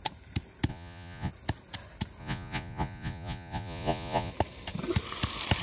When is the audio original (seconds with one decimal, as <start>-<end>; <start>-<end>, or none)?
0.0-0.7; 1.3-2.2; 4.3-5.6